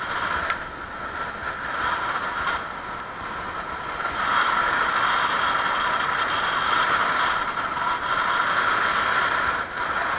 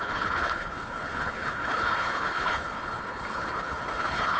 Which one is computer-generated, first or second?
second